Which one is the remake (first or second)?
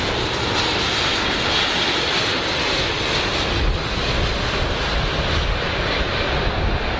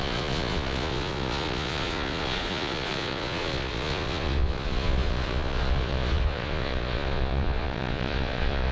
second